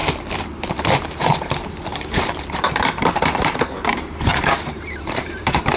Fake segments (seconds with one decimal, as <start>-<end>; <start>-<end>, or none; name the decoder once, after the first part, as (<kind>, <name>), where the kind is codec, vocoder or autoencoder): 0.7-5.8 (vocoder, BigVGAN v2)